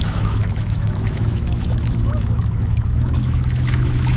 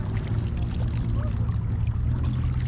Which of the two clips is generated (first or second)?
first